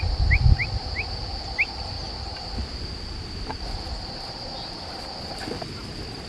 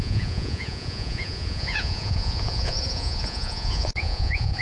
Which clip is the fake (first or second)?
second